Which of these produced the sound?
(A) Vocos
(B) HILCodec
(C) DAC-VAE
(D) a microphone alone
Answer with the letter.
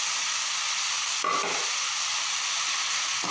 D